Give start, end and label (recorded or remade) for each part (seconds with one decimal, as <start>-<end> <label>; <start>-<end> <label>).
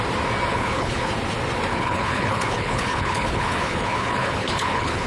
0.0-0.5 recorded; 0.5-1.1 remade; 1.1-1.7 recorded; 1.7-5.1 remade